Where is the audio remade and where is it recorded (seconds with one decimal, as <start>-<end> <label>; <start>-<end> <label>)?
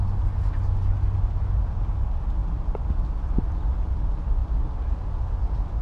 0.0-5.8 recorded